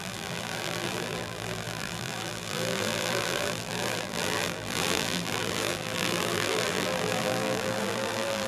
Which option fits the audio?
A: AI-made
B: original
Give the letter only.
A